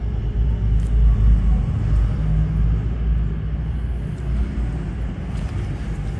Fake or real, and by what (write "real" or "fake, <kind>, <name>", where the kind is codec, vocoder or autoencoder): real